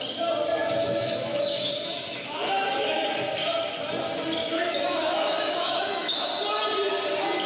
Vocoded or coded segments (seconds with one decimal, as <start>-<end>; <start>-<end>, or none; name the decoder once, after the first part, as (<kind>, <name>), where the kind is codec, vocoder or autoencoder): 0.6-3.1 (autoencoder, DAC-VAE); 4.4-6.3